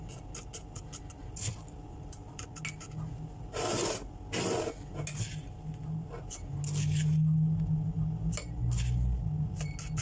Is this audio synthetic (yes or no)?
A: no